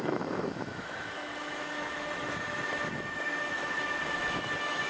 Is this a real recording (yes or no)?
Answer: no